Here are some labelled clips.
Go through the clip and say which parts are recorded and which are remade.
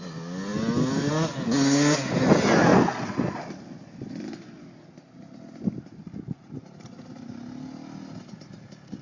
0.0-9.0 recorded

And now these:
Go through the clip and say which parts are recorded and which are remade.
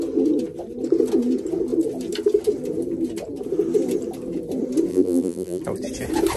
0.0-4.9 recorded; 4.9-5.6 remade; 5.6-6.4 recorded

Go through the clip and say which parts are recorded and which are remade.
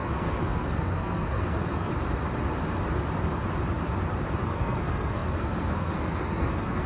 0.0-1.9 remade; 1.9-4.4 recorded; 4.4-6.9 remade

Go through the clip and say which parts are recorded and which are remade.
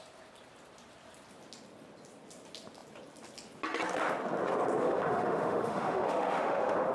0.0-4.8 recorded; 4.8-6.9 remade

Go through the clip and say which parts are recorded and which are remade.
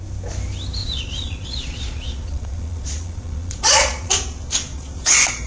0.0-0.8 recorded; 0.8-4.1 remade; 4.1-4.7 recorded; 4.7-5.5 remade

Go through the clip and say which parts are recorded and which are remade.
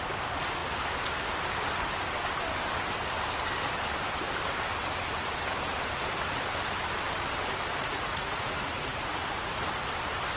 0.0-7.8 recorded; 7.8-9.9 remade; 9.9-10.4 recorded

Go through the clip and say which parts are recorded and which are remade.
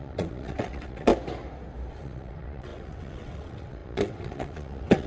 0.0-1.1 remade; 1.1-1.9 recorded; 1.9-5.1 remade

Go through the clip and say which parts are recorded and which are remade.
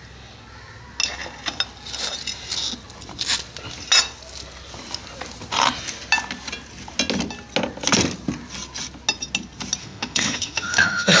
0.0-9.8 recorded; 9.8-11.2 remade